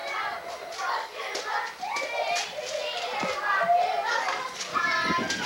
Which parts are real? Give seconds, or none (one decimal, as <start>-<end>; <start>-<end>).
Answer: 0.0-0.8; 1.3-4.1; 4.7-5.5

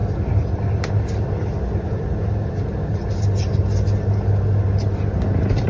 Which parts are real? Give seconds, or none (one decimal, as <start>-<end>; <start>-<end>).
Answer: 0.0-5.7

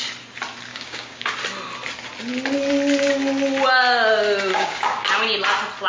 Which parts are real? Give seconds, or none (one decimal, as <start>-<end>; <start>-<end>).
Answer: 0.0-0.7; 1.3-4.5; 5.1-5.9

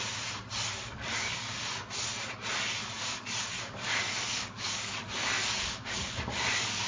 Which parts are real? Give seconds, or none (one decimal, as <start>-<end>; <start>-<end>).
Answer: 0.0-0.7; 1.5-2.8

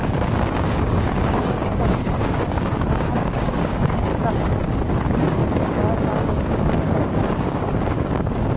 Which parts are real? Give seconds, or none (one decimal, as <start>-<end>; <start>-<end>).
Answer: 4.1-5.0; 5.4-6.0

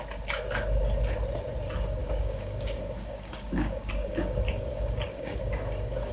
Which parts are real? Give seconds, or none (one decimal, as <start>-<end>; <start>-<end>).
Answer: 0.0-2.0

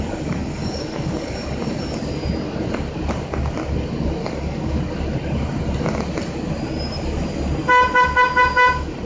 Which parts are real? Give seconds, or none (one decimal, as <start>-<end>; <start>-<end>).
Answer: 0.0-0.4; 1.3-4.2; 4.8-9.1